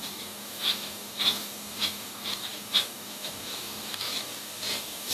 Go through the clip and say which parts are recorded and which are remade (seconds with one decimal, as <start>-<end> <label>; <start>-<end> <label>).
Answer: 0.0-5.1 remade